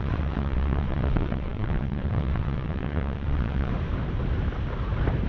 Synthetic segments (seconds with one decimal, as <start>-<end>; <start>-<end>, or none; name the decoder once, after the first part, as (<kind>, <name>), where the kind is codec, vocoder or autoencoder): 0.0-3.7 (vocoder, WaveNeXt)